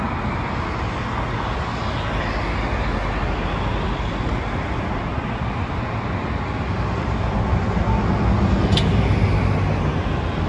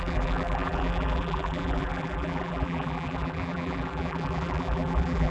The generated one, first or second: second